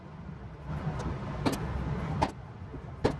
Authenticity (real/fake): real